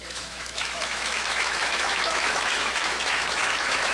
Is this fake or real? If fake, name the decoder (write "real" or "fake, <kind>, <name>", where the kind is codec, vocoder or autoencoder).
fake, autoencoder, DAC-VAE